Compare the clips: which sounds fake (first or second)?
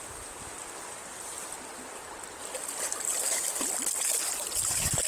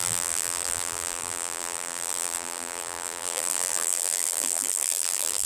second